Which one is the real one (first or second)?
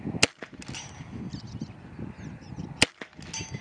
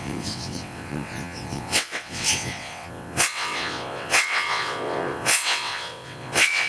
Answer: first